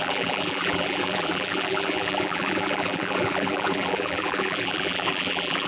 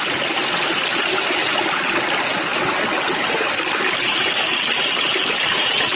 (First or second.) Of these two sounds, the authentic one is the second